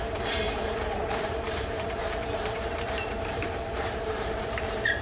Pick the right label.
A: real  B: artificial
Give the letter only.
B